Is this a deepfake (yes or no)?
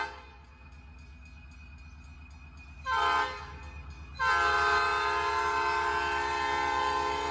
no